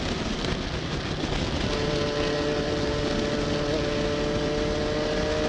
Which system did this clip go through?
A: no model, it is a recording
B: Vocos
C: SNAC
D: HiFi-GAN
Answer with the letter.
A